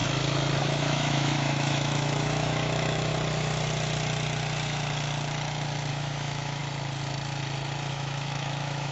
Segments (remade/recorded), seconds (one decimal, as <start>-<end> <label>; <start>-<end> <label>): 0.0-0.6 recorded; 0.6-3.1 remade; 3.1-5.9 recorded; 5.9-6.6 remade; 6.6-7.9 recorded; 7.9-8.9 remade